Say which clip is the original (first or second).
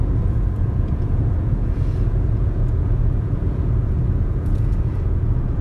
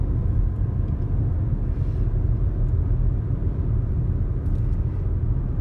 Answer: second